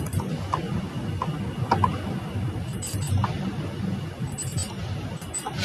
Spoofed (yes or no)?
no